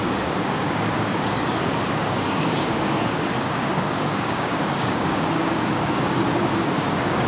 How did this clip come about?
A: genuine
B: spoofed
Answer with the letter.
B